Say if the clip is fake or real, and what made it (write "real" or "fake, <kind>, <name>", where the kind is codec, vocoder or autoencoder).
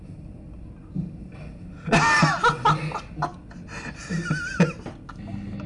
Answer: real